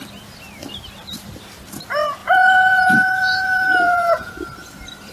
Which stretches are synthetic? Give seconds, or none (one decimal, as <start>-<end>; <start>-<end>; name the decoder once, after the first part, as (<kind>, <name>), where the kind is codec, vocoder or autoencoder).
2.2-4.3 (vocoder, Vocos)